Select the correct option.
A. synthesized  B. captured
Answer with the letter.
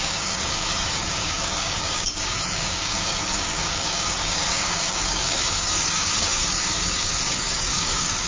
A